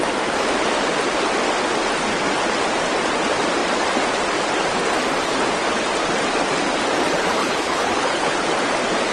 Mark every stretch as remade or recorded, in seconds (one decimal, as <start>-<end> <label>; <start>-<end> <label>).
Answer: 0.0-7.4 recorded; 7.4-8.4 remade; 8.4-9.1 recorded